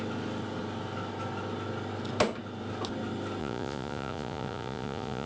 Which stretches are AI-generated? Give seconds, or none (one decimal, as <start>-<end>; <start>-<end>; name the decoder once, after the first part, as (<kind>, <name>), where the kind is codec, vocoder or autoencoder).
3.4-5.3 (vocoder, Vocos)